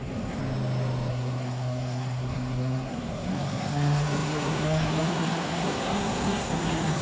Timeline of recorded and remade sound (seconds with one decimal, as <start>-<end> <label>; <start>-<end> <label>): 0.0-0.4 remade; 0.4-1.1 recorded; 1.1-7.0 remade